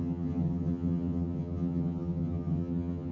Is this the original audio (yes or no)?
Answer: no